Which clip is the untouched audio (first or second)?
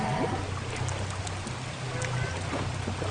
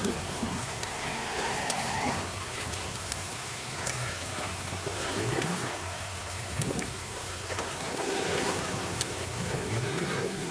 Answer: first